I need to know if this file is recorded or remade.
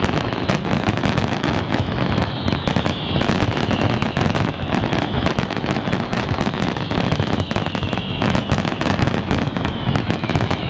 remade